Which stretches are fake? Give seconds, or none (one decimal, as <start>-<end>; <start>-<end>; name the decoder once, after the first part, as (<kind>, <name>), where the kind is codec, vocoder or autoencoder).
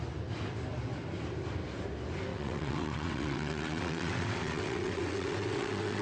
2.3-6.0 (vocoder, WaveNeXt)